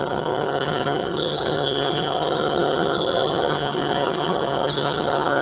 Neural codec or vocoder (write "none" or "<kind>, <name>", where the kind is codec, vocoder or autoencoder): vocoder, HiFi-GAN